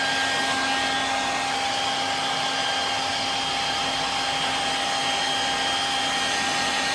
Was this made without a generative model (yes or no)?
yes